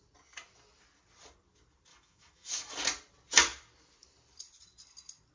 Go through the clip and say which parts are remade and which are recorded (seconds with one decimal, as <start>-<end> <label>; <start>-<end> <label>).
0.0-1.9 recorded; 1.9-2.7 remade; 2.7-5.3 recorded